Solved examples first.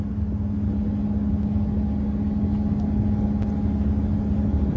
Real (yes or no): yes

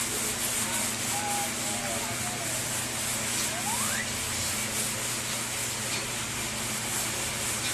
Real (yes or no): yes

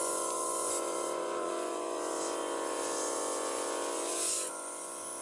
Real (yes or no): no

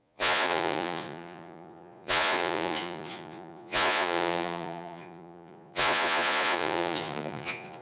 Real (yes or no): no